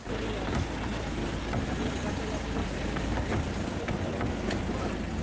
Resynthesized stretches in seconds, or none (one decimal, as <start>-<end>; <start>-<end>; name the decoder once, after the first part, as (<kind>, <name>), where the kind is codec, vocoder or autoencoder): 2.6-3.6 (vocoder, BigVGAN v2)